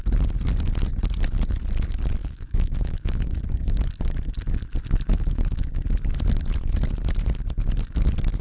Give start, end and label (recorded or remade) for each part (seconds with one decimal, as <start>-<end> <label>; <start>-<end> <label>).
0.0-2.2 recorded; 2.2-3.4 remade; 3.4-5.1 recorded; 5.1-5.7 remade; 5.7-8.4 recorded